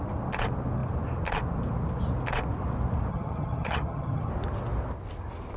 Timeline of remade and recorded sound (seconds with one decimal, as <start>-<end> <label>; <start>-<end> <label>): 0.0-3.1 recorded; 3.1-4.3 remade; 4.3-5.6 recorded